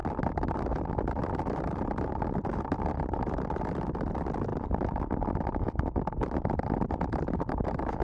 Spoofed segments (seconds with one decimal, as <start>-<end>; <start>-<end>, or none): 4.5-5.2